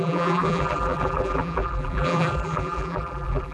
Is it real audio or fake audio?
fake